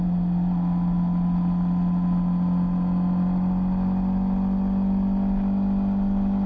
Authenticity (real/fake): real